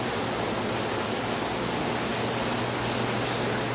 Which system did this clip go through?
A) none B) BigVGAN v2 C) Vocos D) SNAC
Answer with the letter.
A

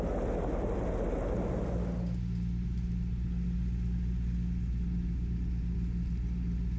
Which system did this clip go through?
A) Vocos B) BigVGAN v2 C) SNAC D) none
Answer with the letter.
D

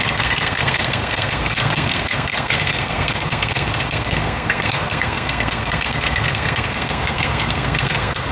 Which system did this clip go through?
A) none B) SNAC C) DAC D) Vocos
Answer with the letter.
B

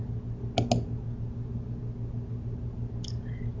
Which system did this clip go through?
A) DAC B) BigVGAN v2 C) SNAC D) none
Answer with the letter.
D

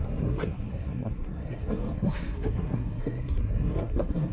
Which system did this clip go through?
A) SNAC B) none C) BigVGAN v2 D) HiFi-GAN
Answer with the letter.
A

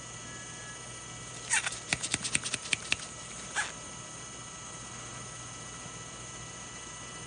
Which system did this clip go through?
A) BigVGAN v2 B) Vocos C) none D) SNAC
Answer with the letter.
C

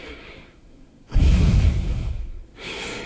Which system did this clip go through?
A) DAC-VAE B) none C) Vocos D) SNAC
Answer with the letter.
D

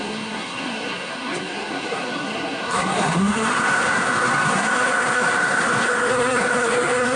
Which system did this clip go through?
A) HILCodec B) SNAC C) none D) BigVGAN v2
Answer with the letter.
B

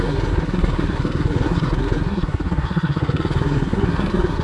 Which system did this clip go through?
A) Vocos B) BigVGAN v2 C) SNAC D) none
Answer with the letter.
C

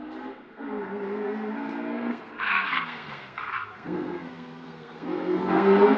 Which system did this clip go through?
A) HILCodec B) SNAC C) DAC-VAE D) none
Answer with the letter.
B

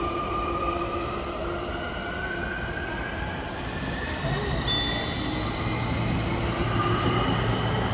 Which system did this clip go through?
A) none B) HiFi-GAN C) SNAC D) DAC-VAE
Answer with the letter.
A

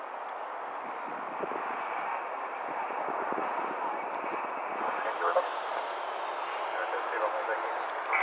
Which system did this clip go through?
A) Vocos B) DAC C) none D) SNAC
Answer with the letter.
C